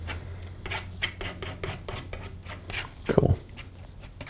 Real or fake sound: real